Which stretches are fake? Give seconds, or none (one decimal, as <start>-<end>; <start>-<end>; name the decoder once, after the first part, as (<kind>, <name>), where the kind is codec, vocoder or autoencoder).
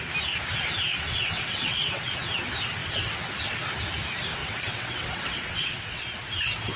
0.9-2.1 (vocoder, WaveNeXt); 4.4-6.0